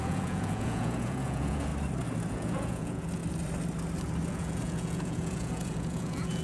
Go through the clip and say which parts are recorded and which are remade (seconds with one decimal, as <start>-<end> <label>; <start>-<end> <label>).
0.0-1.7 remade; 1.7-2.3 recorded; 2.3-3.2 remade; 3.2-4.3 recorded; 4.3-6.4 remade